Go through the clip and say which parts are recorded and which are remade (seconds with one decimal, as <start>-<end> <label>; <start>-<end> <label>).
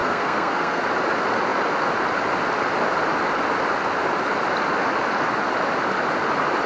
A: 0.0-0.8 remade; 0.8-6.7 recorded